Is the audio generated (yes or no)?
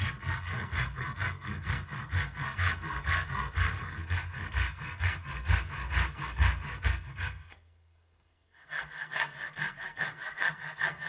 yes